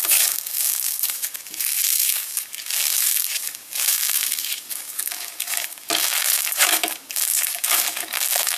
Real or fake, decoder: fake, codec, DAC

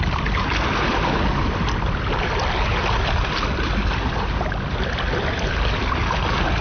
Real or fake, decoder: real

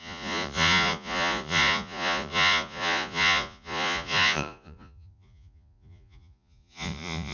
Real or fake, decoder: fake, vocoder, Vocos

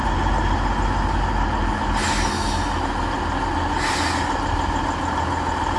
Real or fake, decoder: real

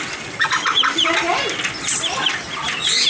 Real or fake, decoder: real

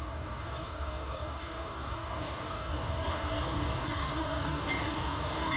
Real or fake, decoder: fake, codec, DAC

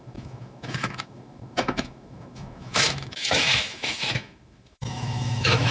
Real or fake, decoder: fake, autoencoder, DAC-VAE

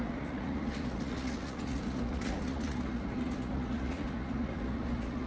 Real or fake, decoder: fake, vocoder, Vocos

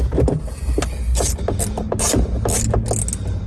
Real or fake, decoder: real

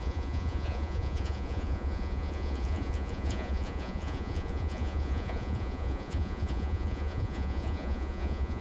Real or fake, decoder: fake, vocoder, Vocos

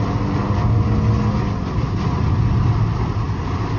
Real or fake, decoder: real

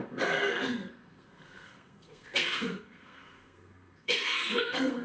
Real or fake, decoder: fake, codec, SNAC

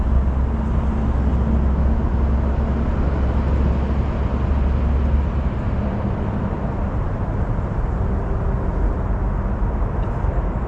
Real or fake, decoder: real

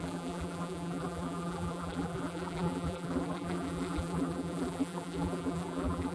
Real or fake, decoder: fake, vocoder, BigVGAN v2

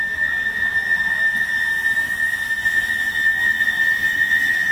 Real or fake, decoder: real